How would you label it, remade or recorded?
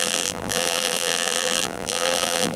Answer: remade